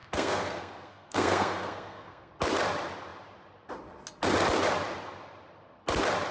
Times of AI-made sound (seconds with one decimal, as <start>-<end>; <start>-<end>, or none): 0.0-2.3